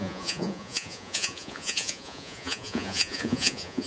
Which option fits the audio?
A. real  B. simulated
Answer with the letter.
B